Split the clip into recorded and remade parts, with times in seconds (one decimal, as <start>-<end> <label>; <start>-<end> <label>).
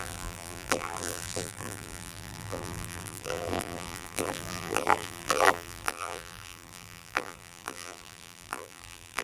0.0-9.2 remade